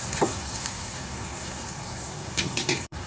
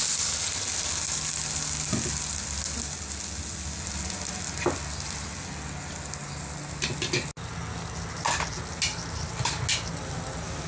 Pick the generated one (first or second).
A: first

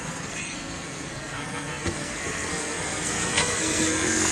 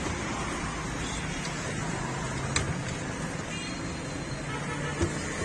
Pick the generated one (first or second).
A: first